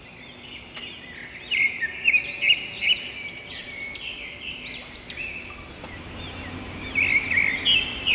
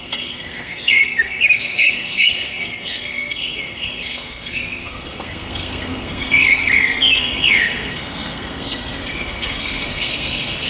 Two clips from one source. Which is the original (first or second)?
first